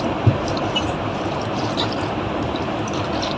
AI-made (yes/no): yes